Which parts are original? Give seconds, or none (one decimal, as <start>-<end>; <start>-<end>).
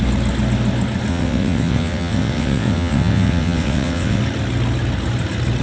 0.0-1.1; 4.2-5.6